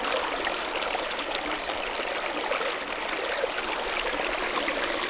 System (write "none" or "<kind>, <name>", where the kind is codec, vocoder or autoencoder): none